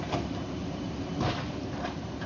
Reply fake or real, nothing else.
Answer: fake